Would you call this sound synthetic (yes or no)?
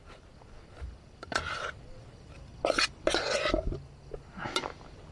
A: no